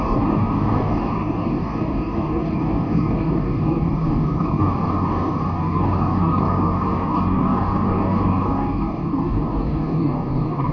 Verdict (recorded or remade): remade